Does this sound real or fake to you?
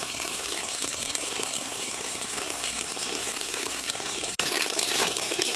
fake